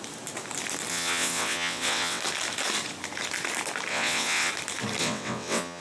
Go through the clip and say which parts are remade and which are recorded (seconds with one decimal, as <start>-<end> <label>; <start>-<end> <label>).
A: 0.0-0.9 recorded; 0.9-2.2 remade; 2.2-3.9 recorded; 3.9-4.5 remade; 4.5-5.0 recorded; 5.0-5.8 remade